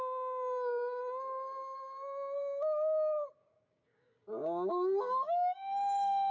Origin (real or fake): fake